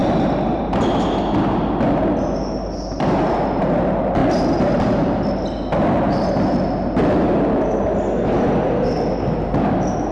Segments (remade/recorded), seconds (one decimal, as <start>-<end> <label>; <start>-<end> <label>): 0.0-10.1 recorded

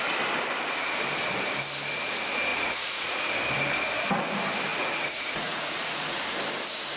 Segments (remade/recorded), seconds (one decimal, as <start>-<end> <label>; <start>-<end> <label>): 0.0-2.5 recorded; 2.5-3.3 remade; 3.3-4.7 recorded; 4.7-6.2 remade; 6.2-7.0 recorded

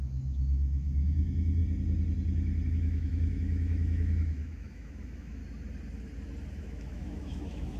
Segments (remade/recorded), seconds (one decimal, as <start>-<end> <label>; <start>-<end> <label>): 0.0-1.6 remade; 1.6-2.7 recorded; 2.7-5.4 remade; 5.4-6.5 recorded; 6.5-7.8 remade

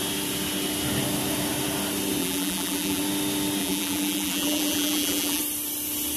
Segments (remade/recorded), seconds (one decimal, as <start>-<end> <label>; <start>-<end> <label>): 0.0-2.2 recorded; 2.2-3.0 remade; 3.0-3.6 recorded; 3.6-5.4 remade; 5.4-6.2 recorded